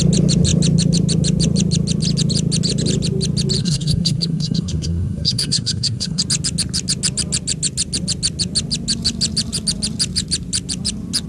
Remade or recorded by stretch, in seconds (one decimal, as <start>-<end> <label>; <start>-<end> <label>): 0.0-3.6 recorded; 3.6-6.2 remade; 6.2-11.3 recorded